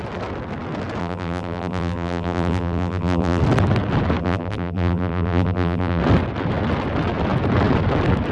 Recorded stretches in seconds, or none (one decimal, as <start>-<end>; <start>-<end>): 0.0-1.0; 3.4-4.2; 6.0-8.3